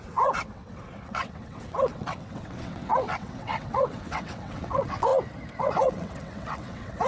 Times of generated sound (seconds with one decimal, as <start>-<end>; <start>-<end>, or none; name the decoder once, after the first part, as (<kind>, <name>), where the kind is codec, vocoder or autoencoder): 0.0-5.1 (vocoder, WaveNeXt); 5.6-7.1